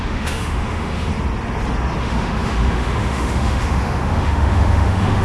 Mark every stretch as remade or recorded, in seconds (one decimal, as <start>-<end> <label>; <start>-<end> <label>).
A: 0.0-1.1 remade; 1.1-2.0 recorded; 2.0-5.2 remade